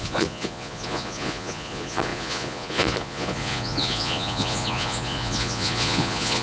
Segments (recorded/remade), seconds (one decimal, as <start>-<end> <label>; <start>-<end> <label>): 0.0-6.4 remade

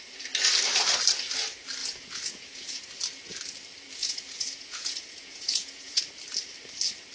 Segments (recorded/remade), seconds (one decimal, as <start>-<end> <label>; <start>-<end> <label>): 0.0-1.8 recorded; 1.8-2.8 remade; 2.8-4.0 recorded; 4.0-6.0 remade; 6.0-7.1 recorded

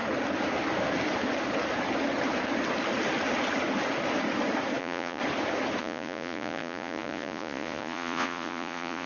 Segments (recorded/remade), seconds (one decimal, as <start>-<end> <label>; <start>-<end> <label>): 0.0-4.8 recorded; 4.8-5.2 remade; 5.2-5.8 recorded; 5.8-9.1 remade

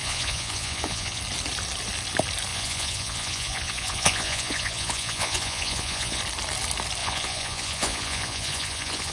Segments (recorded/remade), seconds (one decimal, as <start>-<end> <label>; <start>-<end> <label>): 0.0-1.2 remade; 1.2-2.5 recorded; 2.5-6.2 remade; 6.2-7.0 recorded; 7.0-9.1 remade